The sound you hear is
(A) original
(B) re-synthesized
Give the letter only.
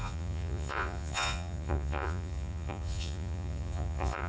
B